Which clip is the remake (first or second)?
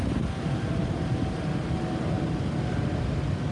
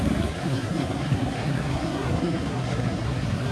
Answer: second